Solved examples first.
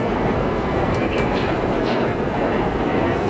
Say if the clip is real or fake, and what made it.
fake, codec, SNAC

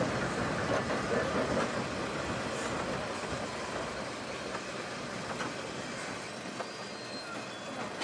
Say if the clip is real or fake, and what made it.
real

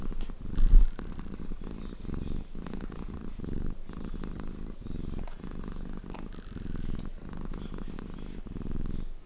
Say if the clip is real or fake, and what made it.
real